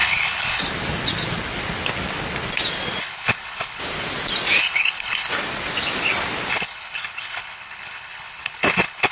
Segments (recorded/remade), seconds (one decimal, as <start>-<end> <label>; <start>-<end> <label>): 0.0-0.6 remade; 0.6-3.0 recorded; 3.0-3.8 remade; 3.8-4.6 recorded; 4.6-5.3 remade; 5.3-6.5 recorded; 6.5-9.1 remade